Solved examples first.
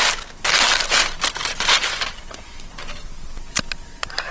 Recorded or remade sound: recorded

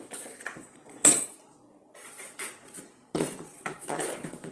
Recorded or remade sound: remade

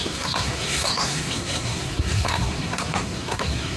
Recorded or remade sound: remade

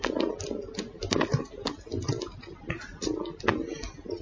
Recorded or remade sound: recorded